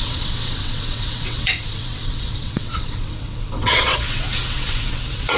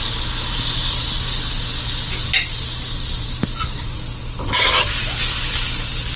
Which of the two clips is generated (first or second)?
first